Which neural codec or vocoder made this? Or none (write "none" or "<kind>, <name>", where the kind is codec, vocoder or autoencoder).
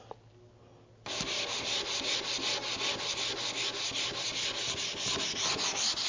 none